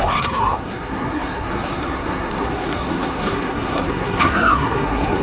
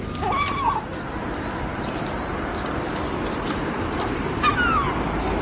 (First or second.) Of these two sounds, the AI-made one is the first